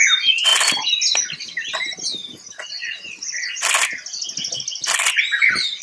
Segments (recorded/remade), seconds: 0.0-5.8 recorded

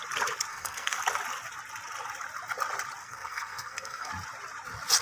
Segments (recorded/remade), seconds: 0.0-0.5 recorded; 0.5-1.0 remade; 1.0-3.0 recorded; 3.0-4.1 remade; 4.1-5.0 recorded

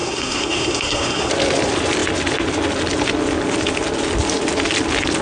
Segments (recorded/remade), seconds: 0.0-1.3 remade; 1.3-5.2 recorded

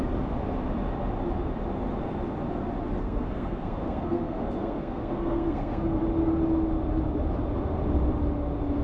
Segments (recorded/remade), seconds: 0.0-3.0 recorded; 3.0-6.0 remade; 6.0-8.8 recorded

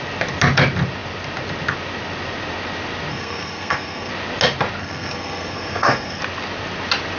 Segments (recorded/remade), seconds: 0.0-3.1 recorded; 3.1-4.1 remade; 4.1-4.8 recorded; 4.8-6.2 remade; 6.2-7.2 recorded